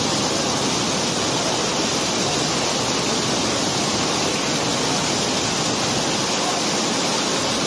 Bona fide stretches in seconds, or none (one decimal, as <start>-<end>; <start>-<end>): 0.0-7.7